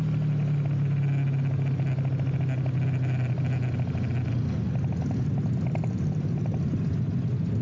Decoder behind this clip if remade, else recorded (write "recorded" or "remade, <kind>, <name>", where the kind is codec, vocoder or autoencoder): recorded